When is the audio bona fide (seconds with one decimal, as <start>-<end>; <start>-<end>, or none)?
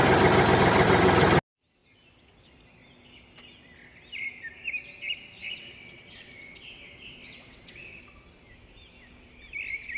0.0-5.4; 8.0-10.0